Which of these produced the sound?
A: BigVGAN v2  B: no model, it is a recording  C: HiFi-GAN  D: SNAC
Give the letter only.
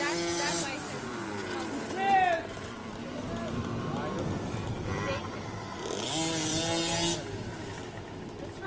B